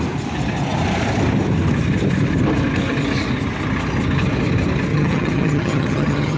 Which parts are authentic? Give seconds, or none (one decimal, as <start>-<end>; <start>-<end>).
0.0-4.9

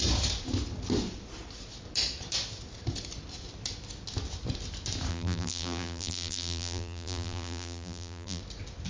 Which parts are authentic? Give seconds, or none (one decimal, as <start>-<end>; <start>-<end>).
0.0-5.1; 8.4-8.9

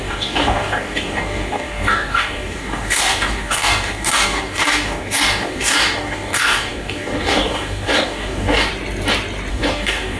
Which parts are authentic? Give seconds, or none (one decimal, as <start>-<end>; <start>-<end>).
8.7-9.5

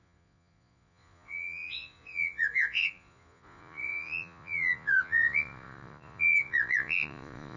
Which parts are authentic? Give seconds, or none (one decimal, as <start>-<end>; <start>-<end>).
none

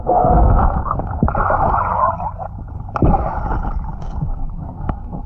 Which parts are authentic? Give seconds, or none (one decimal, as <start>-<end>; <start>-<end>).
1.0-4.2

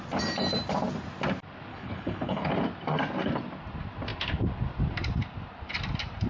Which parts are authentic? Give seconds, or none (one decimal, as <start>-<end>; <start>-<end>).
0.0-1.7; 2.5-6.3

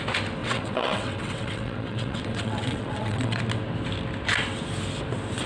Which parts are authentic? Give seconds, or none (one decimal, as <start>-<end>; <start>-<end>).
0.0-0.4; 3.4-5.5